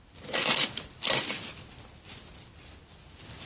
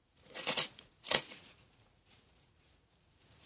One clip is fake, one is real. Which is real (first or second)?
first